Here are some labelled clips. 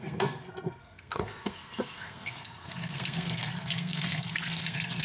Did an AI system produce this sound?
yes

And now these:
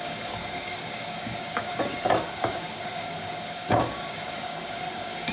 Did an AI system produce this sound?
yes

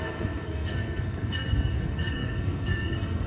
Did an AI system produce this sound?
yes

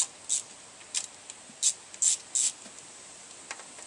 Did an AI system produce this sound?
no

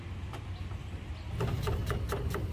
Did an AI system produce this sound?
no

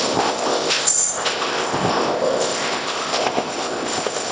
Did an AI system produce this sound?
yes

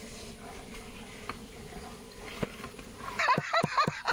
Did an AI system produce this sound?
no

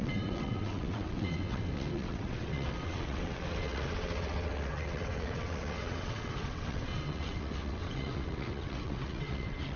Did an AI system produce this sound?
yes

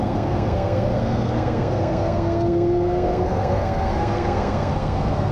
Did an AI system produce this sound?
yes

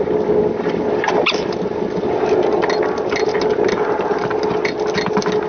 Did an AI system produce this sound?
no